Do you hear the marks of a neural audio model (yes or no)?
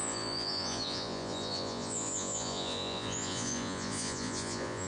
yes